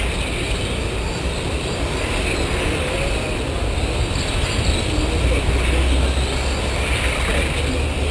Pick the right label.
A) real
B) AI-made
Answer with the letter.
A